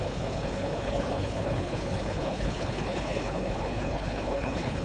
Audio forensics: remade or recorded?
remade